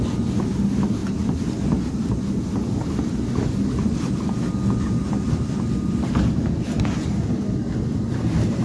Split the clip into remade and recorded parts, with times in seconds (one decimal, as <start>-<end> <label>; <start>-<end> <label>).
0.0-8.6 recorded